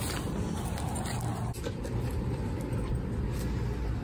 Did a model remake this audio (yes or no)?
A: no